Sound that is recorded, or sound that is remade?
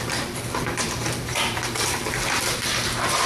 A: remade